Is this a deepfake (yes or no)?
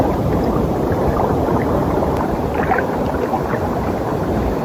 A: yes